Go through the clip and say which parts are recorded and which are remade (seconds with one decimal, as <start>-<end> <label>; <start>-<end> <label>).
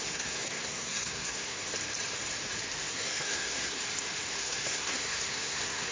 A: 0.0-1.7 remade; 1.7-2.8 recorded; 2.8-3.8 remade; 3.8-4.4 recorded; 4.4-5.9 remade